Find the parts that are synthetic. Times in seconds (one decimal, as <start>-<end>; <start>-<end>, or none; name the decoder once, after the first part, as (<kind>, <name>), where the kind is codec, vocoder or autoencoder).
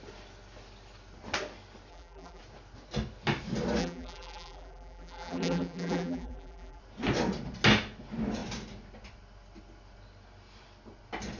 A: 1.9-2.4 (vocoder, BigVGAN v2); 3.8-6.8